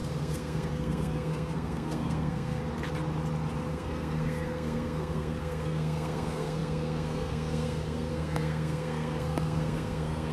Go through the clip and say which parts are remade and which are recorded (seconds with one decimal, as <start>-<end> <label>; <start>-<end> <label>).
0.0-2.6 remade; 2.6-3.7 recorded; 3.7-10.3 remade